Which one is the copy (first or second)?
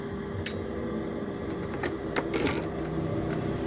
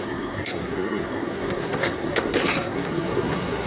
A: second